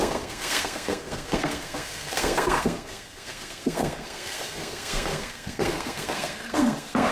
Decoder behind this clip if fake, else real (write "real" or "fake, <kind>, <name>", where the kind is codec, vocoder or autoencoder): fake, codec, SNAC